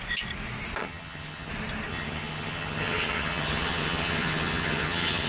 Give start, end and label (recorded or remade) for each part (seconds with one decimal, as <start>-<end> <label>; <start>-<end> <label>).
0.0-0.8 recorded; 0.8-1.5 remade; 1.5-1.9 recorded; 1.9-5.3 remade